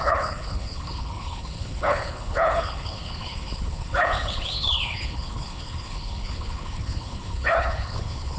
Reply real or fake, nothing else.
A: fake